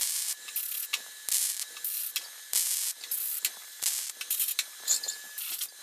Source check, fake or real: real